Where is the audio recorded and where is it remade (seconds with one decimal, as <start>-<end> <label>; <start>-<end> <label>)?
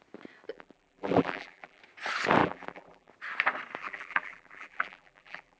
0.0-0.5 recorded; 0.5-1.8 remade; 1.8-2.4 recorded; 2.4-3.1 remade; 3.1-3.8 recorded; 3.8-5.6 remade